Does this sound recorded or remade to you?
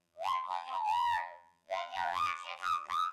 remade